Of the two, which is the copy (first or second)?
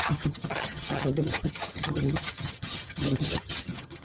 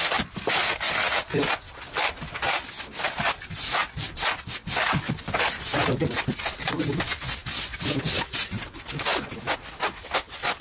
first